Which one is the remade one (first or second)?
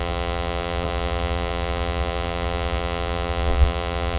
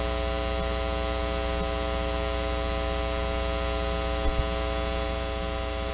first